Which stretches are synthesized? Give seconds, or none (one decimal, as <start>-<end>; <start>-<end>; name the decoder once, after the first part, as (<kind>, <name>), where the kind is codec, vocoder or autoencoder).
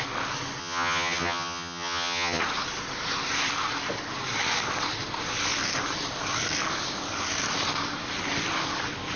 0.6-2.4 (vocoder, HiFi-GAN)